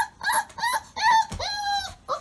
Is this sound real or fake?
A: real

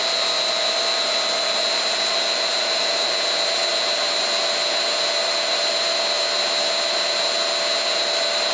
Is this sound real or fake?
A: real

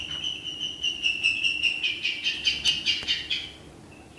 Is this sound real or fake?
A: real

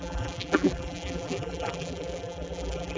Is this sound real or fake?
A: fake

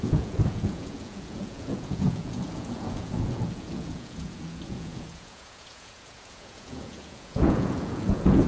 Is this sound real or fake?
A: fake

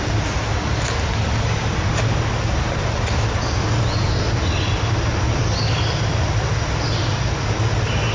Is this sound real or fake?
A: real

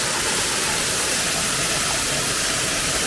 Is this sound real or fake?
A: real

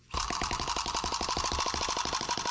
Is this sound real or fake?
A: real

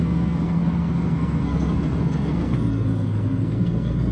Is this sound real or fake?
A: fake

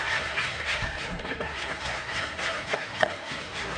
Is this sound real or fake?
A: fake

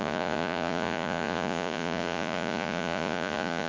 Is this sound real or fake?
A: fake